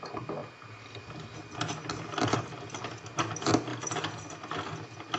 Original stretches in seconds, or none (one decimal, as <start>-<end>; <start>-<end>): 0.0-5.2